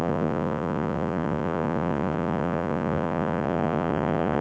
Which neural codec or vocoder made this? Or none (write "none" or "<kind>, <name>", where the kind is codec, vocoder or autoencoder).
vocoder, Vocos